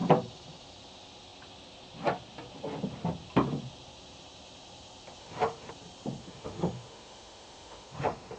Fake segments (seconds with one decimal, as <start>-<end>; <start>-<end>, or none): 5.2-5.7; 6.2-8.4